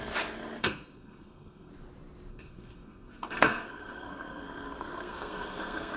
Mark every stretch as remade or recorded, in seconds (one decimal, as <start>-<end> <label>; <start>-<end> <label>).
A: 0.0-0.6 recorded; 0.6-1.7 remade; 1.7-2.3 recorded; 2.3-6.0 remade